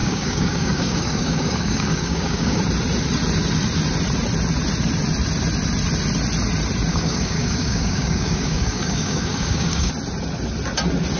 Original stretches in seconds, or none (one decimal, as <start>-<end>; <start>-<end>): 2.6-6.9; 9.9-11.2